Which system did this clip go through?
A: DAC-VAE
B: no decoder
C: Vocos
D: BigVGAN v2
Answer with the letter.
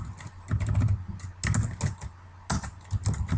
B